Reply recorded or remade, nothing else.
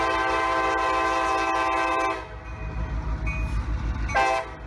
recorded